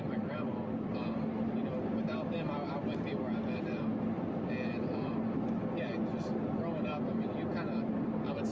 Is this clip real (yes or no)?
yes